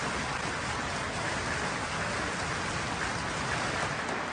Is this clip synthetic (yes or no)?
no